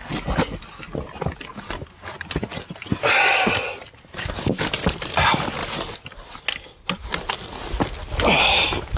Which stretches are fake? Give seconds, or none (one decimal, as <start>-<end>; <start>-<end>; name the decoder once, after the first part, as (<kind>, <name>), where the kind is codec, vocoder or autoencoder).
none